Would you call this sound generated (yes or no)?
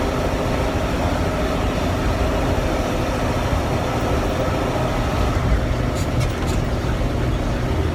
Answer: no